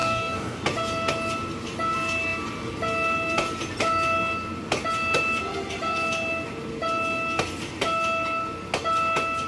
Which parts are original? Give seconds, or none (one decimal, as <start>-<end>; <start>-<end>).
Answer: 0.6-9.5